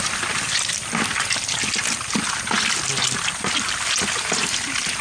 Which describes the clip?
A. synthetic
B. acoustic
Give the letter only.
B